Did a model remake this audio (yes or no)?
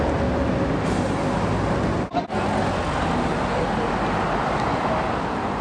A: no